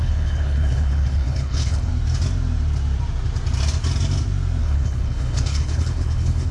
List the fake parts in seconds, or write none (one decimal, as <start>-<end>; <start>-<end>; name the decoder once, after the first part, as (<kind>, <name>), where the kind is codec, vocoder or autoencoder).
0.0-1.9 (codec, HILCodec); 4.6-6.5